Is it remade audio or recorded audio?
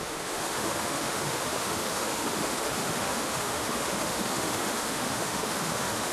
remade